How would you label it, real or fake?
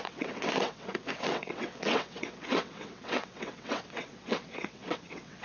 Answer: fake